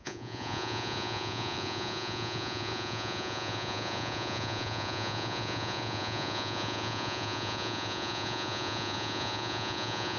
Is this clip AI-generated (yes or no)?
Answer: yes